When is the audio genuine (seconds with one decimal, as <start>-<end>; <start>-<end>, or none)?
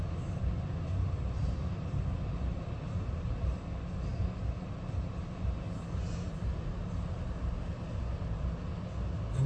0.0-9.5